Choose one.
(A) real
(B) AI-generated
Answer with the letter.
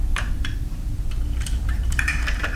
B